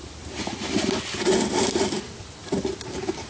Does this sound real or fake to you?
real